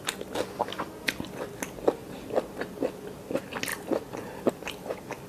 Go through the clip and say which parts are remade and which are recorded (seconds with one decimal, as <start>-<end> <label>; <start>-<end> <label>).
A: 0.0-5.3 recorded